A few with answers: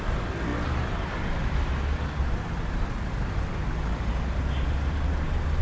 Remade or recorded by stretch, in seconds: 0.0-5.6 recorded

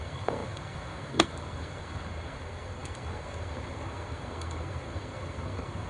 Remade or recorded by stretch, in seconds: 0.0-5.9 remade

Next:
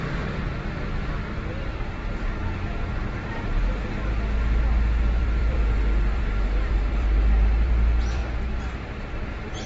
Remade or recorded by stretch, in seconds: 0.0-0.5 remade; 0.5-1.6 recorded; 1.6-2.0 remade; 2.0-5.2 recorded; 5.2-8.2 remade; 8.2-9.7 recorded

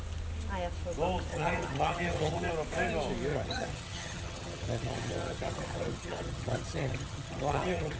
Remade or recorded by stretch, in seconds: 0.0-1.3 recorded; 1.3-2.5 remade; 2.5-3.3 recorded; 3.3-8.0 remade

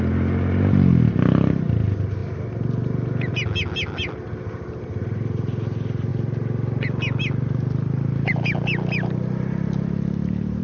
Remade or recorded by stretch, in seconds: 0.0-10.6 recorded

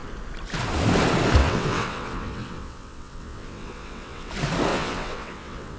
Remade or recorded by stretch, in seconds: 0.0-1.4 recorded; 1.4-4.3 remade; 4.3-4.7 recorded; 4.7-5.8 remade